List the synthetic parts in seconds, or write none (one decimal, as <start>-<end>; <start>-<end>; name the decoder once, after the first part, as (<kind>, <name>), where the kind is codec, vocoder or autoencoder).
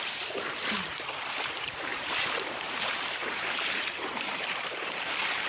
0.0-5.5 (vocoder, BigVGAN v2)